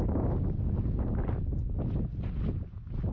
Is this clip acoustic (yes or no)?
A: yes